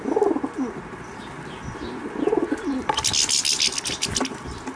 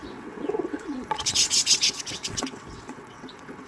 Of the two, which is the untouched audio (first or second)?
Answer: first